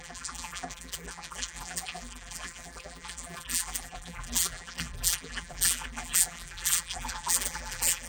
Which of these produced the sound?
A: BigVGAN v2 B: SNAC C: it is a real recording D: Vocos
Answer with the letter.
A